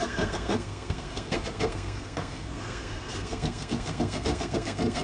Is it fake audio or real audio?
fake